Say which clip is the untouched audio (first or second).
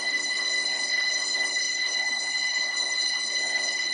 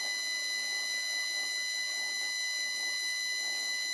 second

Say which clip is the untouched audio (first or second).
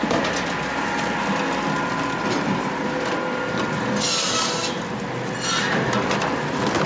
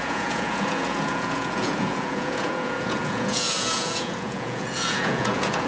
first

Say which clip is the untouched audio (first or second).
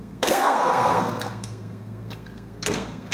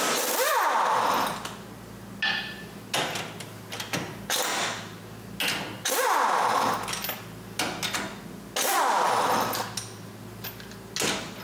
second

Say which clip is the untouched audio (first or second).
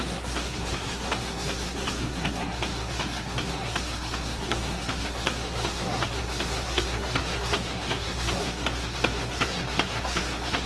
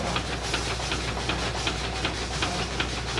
second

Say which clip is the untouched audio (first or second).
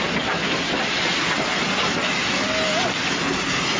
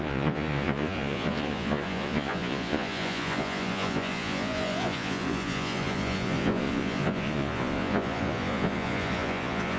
first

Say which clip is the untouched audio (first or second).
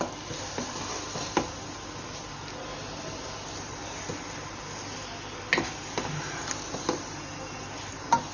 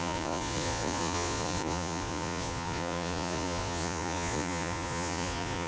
first